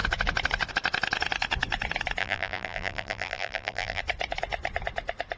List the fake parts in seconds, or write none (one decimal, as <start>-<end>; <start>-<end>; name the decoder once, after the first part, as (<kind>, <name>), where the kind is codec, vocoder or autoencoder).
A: 2.2-4.0 (vocoder, BigVGAN v2)